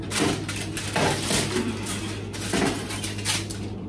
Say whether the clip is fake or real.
real